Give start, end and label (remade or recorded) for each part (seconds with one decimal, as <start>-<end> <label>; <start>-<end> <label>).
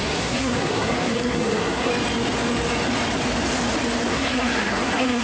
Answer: 0.0-1.9 remade; 1.9-4.1 recorded; 4.1-5.2 remade